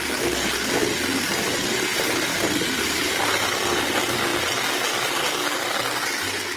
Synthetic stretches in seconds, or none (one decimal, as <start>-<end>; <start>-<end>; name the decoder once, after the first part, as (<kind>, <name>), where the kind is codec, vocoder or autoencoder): 1.9-3.8 (vocoder, BigVGAN v2)